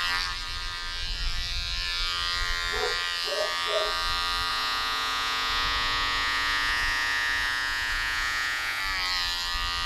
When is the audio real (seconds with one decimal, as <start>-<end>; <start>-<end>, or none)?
0.0-4.5; 8.8-9.9